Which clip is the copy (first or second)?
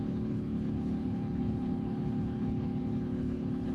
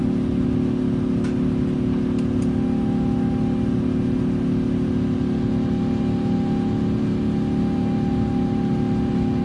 first